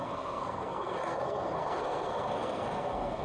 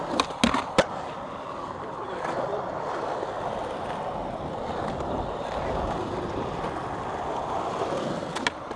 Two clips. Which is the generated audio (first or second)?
first